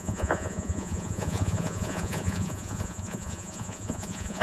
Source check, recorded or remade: remade